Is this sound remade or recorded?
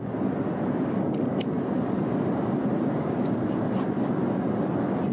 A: remade